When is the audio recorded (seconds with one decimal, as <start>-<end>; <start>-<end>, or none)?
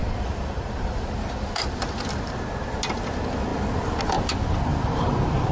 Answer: 2.4-4.7